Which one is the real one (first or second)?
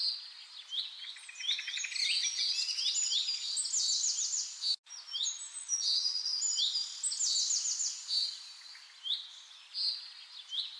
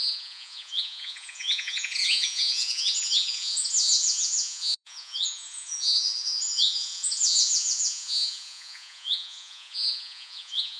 first